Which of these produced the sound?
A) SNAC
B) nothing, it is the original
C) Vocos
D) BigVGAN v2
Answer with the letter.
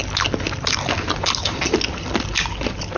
B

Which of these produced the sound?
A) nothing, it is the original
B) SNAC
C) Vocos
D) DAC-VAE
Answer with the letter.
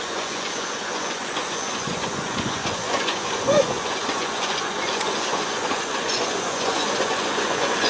C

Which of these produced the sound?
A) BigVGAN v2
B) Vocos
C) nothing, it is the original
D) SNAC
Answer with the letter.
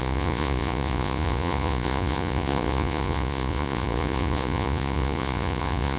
B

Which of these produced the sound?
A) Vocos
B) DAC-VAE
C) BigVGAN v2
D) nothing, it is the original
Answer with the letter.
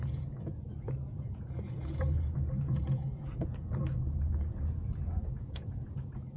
A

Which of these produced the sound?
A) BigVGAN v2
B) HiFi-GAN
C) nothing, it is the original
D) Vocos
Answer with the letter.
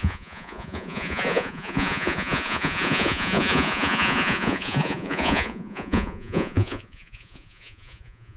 D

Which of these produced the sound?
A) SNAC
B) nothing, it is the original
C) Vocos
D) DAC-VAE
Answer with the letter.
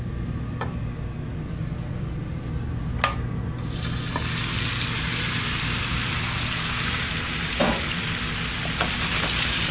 B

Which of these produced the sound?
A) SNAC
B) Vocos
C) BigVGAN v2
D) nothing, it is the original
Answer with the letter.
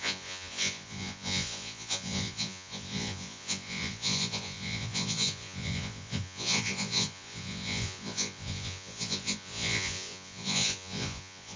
B